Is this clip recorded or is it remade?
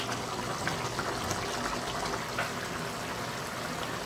recorded